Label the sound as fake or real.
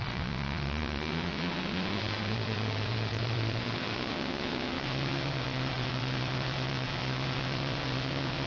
fake